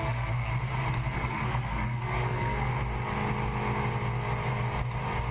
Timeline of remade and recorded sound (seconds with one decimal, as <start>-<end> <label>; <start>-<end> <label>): 0.0-0.5 remade; 0.5-1.1 recorded; 1.1-2.7 remade; 2.7-5.3 recorded